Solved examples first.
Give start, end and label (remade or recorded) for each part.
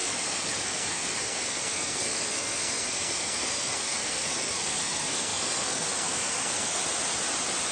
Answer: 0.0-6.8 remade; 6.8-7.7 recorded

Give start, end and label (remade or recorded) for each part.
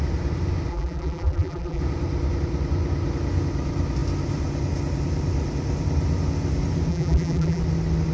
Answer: 0.0-0.7 recorded; 0.7-1.8 remade; 1.8-6.9 recorded; 6.9-7.6 remade; 7.6-8.1 recorded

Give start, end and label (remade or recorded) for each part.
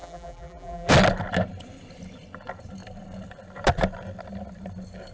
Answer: 0.0-0.9 remade; 0.9-5.1 recorded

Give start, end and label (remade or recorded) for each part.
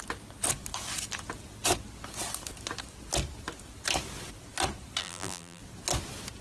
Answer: 0.0-5.0 recorded; 5.0-5.6 remade; 5.6-6.4 recorded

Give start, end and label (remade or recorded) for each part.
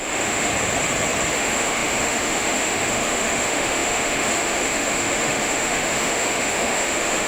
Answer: 0.0-0.5 remade; 0.5-1.3 recorded; 1.3-7.3 remade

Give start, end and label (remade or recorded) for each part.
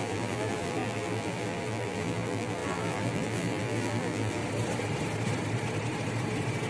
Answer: 0.0-4.4 remade; 4.4-6.7 recorded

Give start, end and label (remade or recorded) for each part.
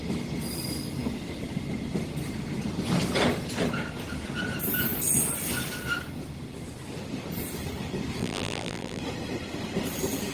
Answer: 0.0-8.2 recorded; 8.2-9.0 remade; 9.0-10.3 recorded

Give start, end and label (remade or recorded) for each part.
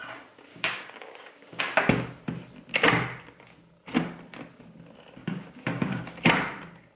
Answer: 0.0-0.5 recorded; 0.5-1.6 remade; 1.6-5.2 recorded; 5.2-6.0 remade; 6.0-7.0 recorded